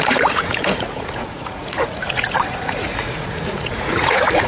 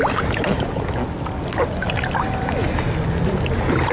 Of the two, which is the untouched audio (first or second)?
second